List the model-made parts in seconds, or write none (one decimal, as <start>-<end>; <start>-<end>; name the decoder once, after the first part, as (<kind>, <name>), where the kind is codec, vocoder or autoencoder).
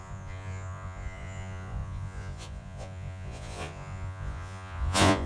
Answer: 0.0-5.3 (vocoder, Vocos)